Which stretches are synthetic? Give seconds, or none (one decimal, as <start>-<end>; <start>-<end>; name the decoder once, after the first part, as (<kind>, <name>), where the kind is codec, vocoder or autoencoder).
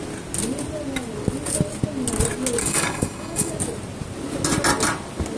2.6-3.5 (codec, DAC)